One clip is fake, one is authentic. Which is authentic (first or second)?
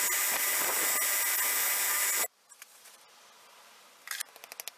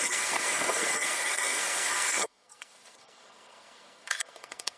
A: first